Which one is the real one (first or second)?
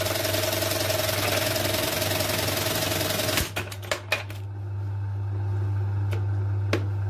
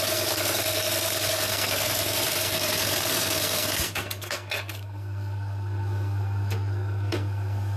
first